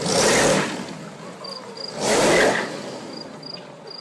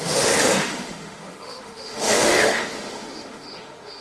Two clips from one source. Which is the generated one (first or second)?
second